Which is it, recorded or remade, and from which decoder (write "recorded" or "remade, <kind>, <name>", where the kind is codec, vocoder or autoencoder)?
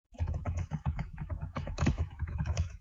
remade, autoencoder, DAC-VAE